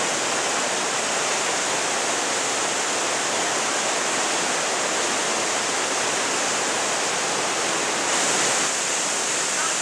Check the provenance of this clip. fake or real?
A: real